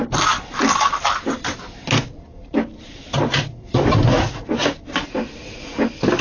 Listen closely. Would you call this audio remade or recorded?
recorded